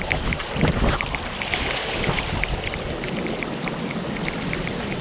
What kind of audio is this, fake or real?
real